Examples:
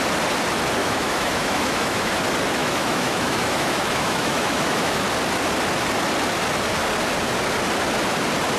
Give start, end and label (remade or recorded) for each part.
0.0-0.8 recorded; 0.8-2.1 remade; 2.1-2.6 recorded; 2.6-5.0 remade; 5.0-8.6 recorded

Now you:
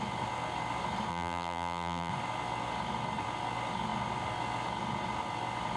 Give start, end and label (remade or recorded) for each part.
0.0-1.1 recorded; 1.1-2.1 remade; 2.1-5.8 recorded

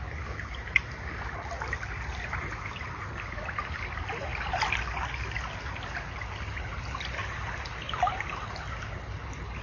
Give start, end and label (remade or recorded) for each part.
0.0-9.6 recorded

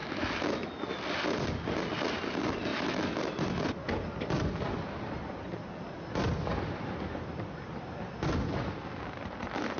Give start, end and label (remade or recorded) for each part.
0.0-0.8 remade; 0.8-2.7 recorded; 2.7-3.2 remade; 3.2-9.8 recorded

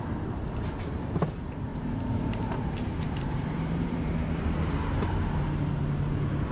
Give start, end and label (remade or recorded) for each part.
0.0-1.7 recorded; 1.7-4.6 remade; 4.6-6.5 recorded

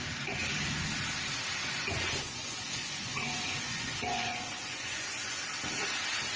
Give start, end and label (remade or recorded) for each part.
0.0-1.6 recorded; 1.6-5.4 remade; 5.4-6.4 recorded

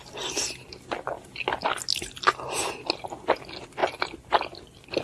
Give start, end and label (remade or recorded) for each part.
0.0-5.0 recorded

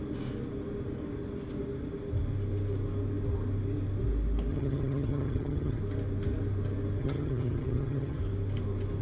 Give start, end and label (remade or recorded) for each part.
0.0-4.5 recorded; 4.5-5.8 remade; 5.8-7.0 recorded; 7.0-8.2 remade; 8.2-9.0 recorded